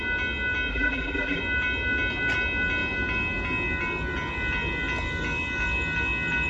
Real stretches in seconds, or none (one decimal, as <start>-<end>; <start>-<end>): 0.0-0.7; 1.4-6.5